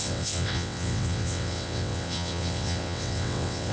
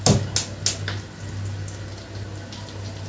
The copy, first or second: first